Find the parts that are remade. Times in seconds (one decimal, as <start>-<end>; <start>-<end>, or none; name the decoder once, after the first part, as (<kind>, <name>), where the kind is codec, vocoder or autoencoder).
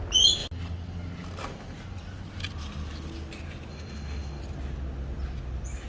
3.7-4.4 (autoencoder, DAC-VAE)